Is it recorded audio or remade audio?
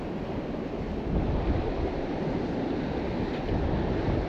recorded